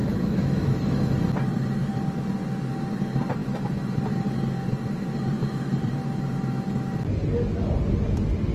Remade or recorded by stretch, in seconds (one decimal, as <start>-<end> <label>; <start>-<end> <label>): 0.0-1.1 remade; 1.1-8.5 recorded